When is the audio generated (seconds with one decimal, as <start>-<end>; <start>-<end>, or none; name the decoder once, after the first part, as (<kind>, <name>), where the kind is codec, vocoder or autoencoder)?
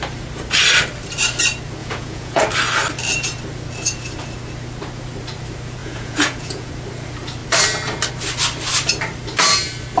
1.8-2.4 (vocoder, Vocos); 5.8-6.7